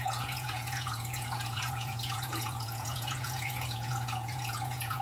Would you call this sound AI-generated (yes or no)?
yes